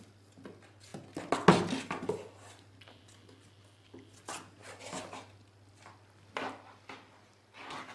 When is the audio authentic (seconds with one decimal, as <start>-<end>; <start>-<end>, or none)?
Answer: 0.0-7.9